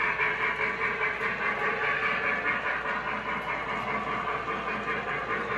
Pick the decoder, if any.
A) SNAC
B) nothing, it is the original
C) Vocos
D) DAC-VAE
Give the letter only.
B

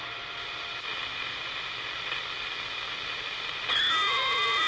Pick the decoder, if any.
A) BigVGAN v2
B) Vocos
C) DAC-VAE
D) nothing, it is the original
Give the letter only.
D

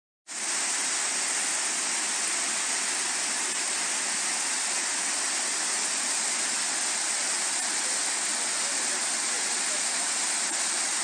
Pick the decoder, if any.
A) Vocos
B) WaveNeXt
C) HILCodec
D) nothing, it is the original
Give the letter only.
D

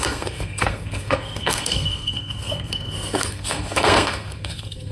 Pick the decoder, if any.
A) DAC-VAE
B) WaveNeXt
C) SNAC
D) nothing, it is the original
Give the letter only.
C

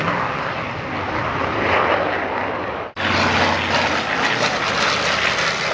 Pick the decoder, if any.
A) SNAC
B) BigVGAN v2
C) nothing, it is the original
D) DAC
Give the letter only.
C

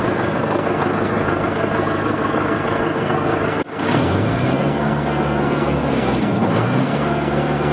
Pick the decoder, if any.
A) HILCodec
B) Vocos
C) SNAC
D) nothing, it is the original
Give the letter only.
C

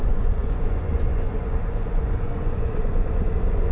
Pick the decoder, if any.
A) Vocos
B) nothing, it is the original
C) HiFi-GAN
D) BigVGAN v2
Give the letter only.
A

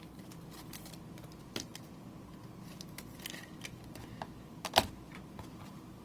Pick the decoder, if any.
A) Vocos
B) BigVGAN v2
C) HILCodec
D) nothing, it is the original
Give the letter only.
D